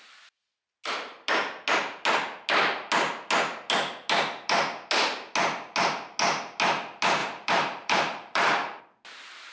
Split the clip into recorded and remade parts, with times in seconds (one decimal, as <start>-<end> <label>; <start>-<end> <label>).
0.0-7.2 recorded; 7.2-8.8 remade; 8.8-9.5 recorded